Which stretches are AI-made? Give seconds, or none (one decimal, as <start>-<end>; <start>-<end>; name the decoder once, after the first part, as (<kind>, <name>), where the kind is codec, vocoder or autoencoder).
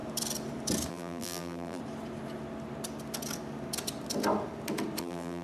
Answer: 0.9-1.8 (vocoder, BigVGAN v2); 5.0-5.4